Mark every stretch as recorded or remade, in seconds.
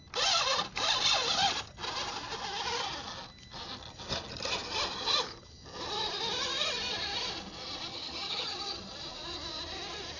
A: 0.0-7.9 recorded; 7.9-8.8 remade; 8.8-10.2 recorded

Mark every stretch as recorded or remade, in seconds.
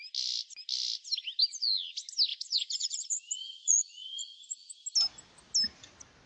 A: 0.0-2.3 recorded; 2.3-4.8 remade; 4.8-6.3 recorded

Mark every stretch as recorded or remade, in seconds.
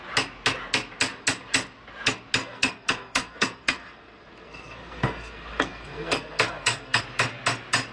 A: 0.0-2.4 recorded; 2.4-7.0 remade; 7.0-7.9 recorded